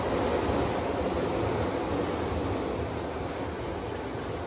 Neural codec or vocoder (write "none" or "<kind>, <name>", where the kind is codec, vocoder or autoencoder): none